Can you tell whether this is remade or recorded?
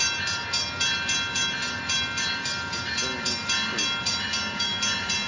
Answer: recorded